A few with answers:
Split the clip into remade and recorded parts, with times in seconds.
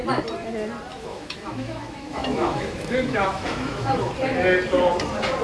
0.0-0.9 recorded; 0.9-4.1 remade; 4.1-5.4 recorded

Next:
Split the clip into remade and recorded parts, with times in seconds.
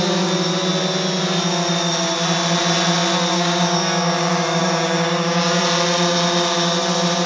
0.0-3.3 recorded; 3.3-5.6 remade; 5.6-7.3 recorded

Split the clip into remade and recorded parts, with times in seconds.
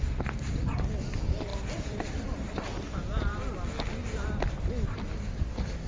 0.0-1.5 recorded; 1.5-3.4 remade; 3.4-4.0 recorded; 4.0-4.7 remade; 4.7-5.9 recorded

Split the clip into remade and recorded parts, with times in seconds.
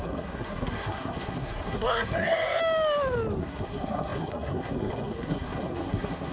0.0-2.6 remade; 2.6-3.4 recorded; 3.4-6.3 remade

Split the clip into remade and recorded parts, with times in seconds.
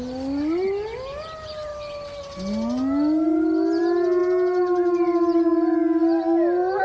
0.0-6.8 recorded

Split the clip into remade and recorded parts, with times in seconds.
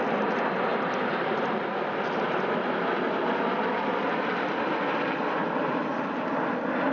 0.0-6.9 recorded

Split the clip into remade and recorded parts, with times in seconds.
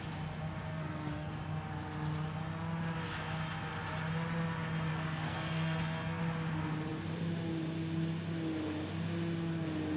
0.0-0.7 recorded; 0.7-1.3 remade; 1.3-4.9 recorded; 4.9-6.2 remade; 6.2-10.0 recorded